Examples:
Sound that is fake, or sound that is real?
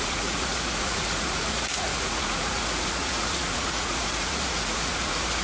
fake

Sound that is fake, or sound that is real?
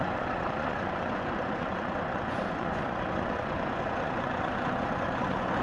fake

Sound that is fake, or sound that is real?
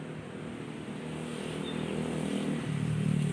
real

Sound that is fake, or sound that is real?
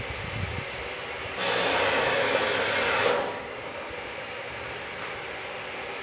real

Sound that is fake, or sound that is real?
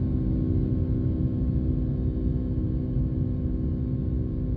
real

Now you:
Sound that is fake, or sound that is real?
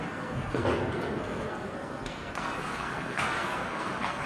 fake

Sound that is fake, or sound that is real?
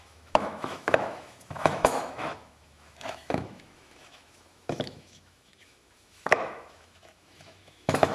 fake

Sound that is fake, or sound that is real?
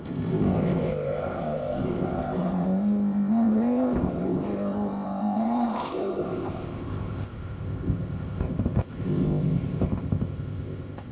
fake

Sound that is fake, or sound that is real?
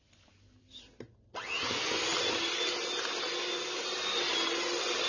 real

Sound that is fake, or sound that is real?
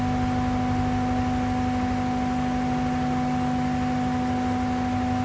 real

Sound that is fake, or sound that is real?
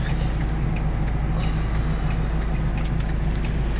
real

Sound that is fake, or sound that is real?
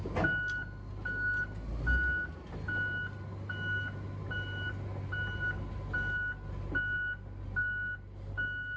real